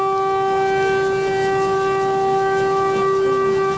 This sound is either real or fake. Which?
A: real